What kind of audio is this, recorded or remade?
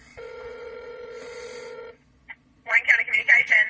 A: remade